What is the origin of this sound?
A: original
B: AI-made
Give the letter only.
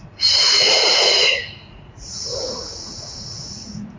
B